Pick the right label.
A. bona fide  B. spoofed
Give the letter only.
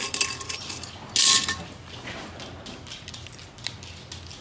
A